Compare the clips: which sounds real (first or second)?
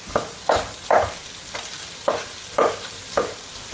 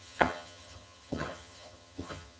first